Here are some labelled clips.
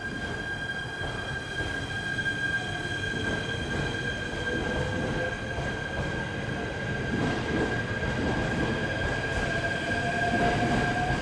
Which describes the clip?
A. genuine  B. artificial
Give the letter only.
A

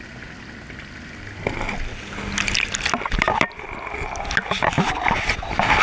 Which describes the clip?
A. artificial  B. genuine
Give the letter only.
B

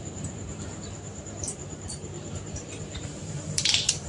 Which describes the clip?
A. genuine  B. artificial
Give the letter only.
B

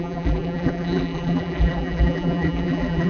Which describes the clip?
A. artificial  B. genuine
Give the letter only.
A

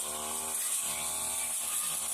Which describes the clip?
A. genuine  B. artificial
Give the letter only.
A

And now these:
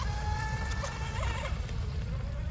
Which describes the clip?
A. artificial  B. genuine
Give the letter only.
B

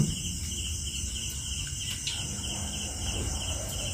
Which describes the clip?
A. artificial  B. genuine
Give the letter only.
B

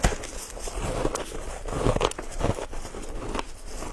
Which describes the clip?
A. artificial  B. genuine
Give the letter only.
B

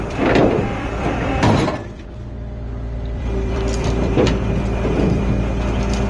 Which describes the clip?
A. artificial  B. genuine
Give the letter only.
A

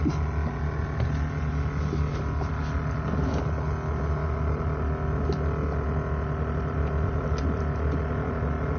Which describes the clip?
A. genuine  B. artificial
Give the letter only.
A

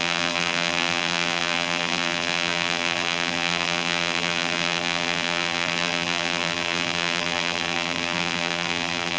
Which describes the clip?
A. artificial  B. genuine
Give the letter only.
A